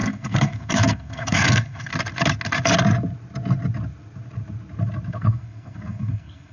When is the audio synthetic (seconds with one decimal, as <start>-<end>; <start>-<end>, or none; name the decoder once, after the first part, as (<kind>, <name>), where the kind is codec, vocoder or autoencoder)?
0.0-1.9 (codec, SNAC); 5.1-6.5